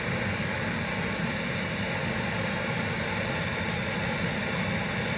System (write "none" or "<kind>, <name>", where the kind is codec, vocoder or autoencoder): none